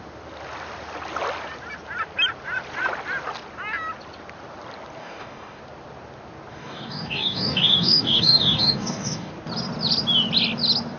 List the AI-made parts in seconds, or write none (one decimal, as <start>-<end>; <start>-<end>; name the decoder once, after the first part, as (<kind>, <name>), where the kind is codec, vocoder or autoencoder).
5.0-5.6 (codec, DAC); 6.5-9.3